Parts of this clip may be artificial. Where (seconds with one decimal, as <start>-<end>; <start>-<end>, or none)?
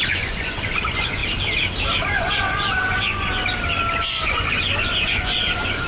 0.0-1.2; 2.0-3.4; 4.0-5.9